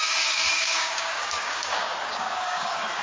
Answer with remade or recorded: remade